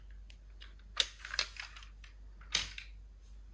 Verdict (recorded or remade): recorded